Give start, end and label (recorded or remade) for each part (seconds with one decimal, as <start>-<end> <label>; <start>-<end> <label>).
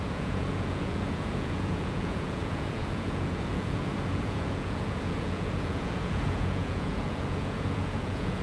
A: 0.0-8.4 remade